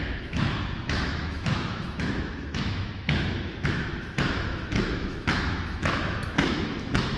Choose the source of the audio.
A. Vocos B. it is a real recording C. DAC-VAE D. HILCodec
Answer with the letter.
C